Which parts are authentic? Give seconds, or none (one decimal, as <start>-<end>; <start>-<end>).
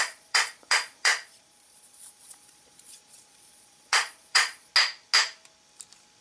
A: 4.7-6.2